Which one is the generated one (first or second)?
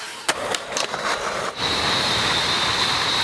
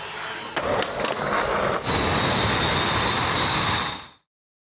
first